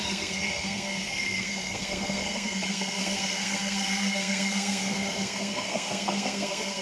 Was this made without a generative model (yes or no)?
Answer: no